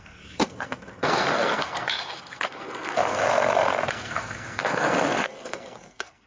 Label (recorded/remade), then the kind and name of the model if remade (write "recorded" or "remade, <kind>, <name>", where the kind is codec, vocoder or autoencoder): remade, codec, SNAC